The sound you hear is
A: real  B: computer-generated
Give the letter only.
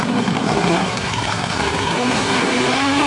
B